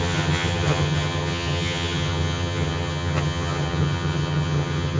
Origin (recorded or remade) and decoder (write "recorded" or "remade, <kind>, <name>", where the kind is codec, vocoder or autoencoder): remade, vocoder, HiFi-GAN